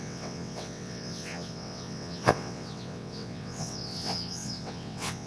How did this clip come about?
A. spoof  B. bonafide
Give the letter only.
A